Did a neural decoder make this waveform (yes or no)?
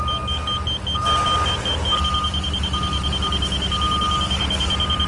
no